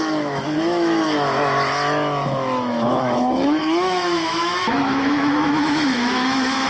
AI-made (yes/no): yes